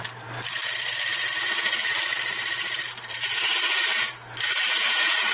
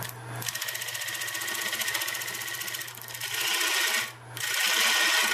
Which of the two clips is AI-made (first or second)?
first